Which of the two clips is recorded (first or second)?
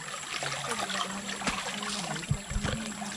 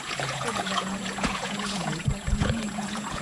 first